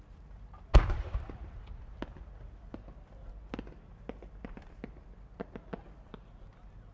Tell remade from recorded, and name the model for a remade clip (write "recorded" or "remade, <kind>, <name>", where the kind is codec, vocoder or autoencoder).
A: recorded